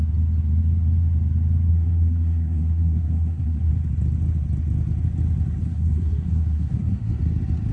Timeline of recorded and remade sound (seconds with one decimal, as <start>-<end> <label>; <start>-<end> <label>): 0.0-1.7 recorded; 1.7-3.7 remade; 3.7-5.6 recorded; 5.6-7.1 remade; 7.1-7.7 recorded